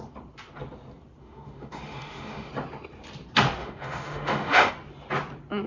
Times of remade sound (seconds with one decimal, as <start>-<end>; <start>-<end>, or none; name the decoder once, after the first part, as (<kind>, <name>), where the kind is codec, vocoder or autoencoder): 1.2-2.5 (autoencoder, DAC-VAE); 3.6-4.7